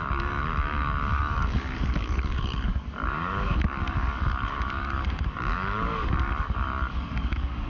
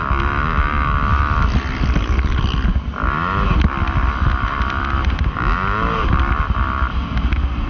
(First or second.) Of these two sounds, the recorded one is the second